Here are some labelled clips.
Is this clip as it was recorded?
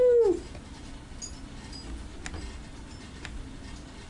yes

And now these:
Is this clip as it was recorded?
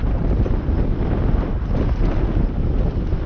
yes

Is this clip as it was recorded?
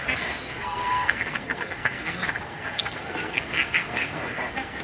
no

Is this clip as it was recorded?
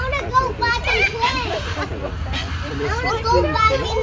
no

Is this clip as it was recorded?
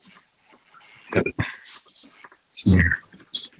yes